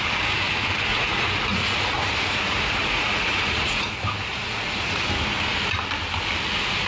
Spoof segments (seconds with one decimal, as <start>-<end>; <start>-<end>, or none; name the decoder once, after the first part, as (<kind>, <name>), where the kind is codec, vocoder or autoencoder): 0.9-5.0 (vocoder, Vocos)